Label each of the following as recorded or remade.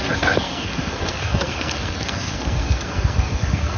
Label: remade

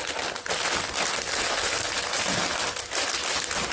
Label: recorded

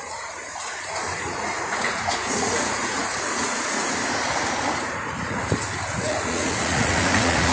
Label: remade